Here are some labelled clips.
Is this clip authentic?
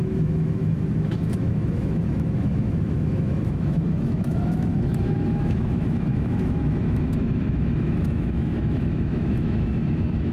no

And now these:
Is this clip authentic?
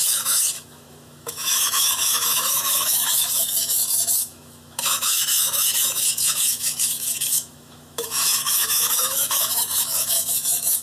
no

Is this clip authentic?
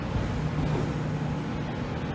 yes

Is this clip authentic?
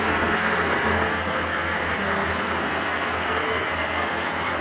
no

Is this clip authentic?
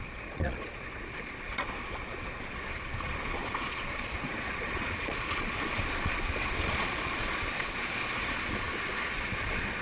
no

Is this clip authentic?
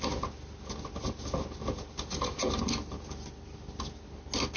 yes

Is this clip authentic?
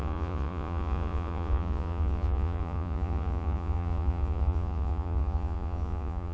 no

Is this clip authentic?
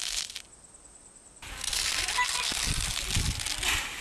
yes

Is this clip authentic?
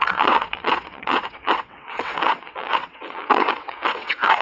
no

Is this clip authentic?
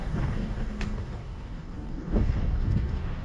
no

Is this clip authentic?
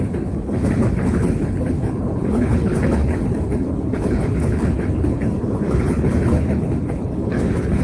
no